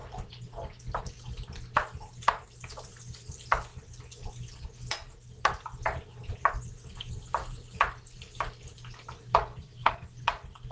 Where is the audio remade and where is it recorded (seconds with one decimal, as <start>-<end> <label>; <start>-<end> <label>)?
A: 0.0-9.5 recorded; 9.5-10.1 remade; 10.1-10.7 recorded